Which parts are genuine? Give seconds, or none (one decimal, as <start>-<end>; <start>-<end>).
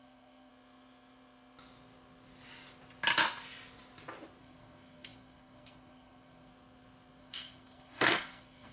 0.5-4.4; 6.5-7.2